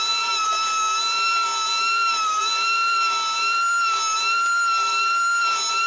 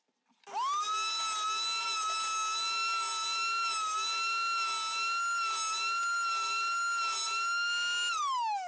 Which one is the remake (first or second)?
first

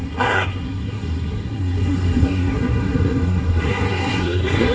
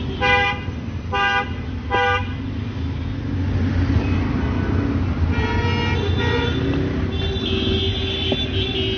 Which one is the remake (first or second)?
first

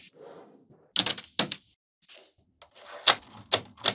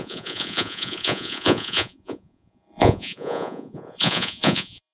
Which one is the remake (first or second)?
second